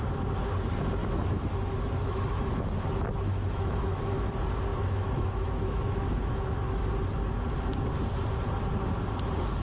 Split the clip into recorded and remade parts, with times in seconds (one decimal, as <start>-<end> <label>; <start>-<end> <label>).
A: 0.0-1.0 recorded; 1.0-2.4 remade; 2.4-3.3 recorded; 3.3-4.3 remade; 4.3-4.7 recorded; 4.7-6.8 remade; 6.8-9.6 recorded